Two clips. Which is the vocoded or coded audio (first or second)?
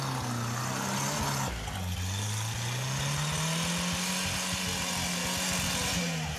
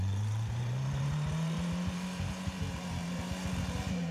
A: second